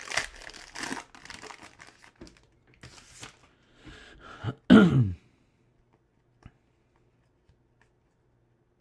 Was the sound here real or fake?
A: real